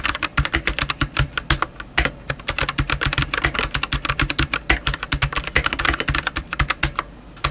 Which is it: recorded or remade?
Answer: recorded